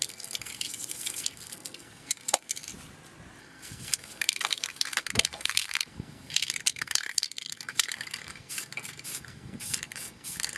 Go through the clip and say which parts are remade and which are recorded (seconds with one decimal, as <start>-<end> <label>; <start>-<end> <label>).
0.0-2.7 remade; 2.7-3.4 recorded; 3.4-10.6 remade